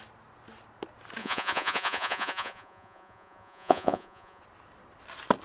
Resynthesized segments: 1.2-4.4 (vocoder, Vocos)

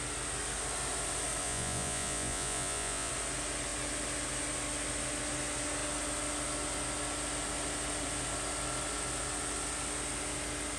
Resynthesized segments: 1.4-3.1 (vocoder, Vocos)

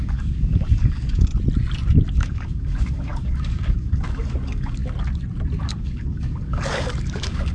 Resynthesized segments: 0.0-1.3 (codec, DAC); 2.1-4.8; 5.7-7.5

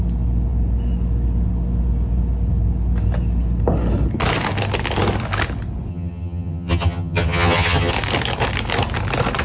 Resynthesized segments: 5.9-7.9 (vocoder, HiFi-GAN)

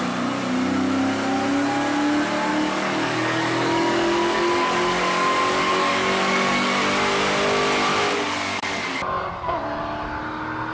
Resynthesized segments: 2.5-6.8 (codec, DAC); 7.9-9.0